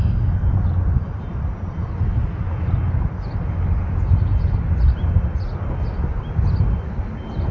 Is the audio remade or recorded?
recorded